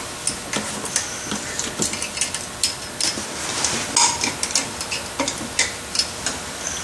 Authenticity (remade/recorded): recorded